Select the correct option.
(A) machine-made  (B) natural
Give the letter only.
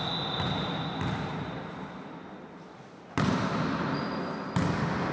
B